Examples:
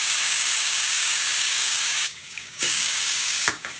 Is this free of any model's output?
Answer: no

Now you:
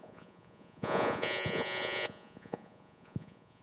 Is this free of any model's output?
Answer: no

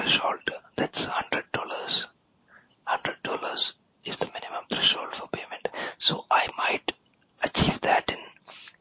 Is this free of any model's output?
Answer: yes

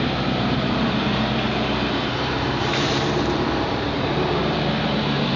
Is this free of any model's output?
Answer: no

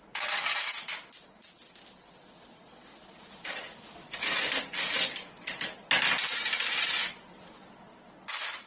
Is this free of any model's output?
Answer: yes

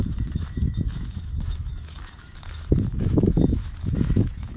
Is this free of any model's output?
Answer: no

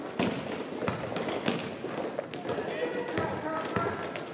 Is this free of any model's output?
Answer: yes